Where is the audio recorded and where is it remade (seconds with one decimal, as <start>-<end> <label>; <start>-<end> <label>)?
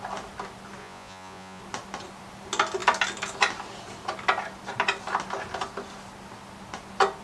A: 0.0-0.8 recorded; 0.8-1.6 remade; 1.6-7.2 recorded